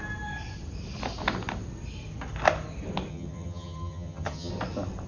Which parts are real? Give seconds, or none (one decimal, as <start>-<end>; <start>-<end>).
0.0-3.1; 4.5-5.1